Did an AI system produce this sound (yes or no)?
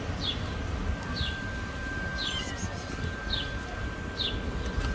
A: no